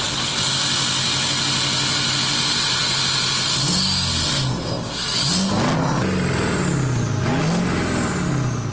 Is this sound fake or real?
real